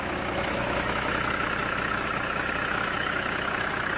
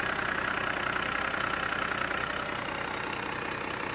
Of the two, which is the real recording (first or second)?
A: second